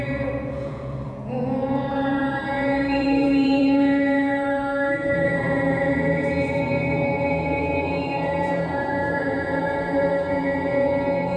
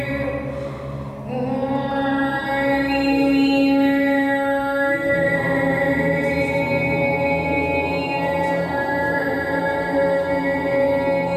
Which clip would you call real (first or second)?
second